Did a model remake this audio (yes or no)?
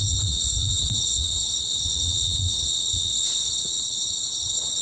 yes